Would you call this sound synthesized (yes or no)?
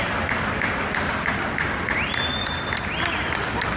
no